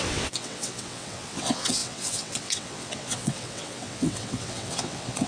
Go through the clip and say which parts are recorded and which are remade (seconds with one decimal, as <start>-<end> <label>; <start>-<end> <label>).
0.0-5.3 remade